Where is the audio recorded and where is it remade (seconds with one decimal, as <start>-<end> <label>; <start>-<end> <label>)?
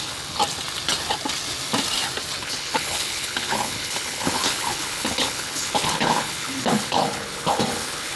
0.0-0.4 remade; 0.4-2.4 recorded; 2.4-8.2 remade